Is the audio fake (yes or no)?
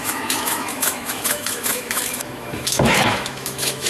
yes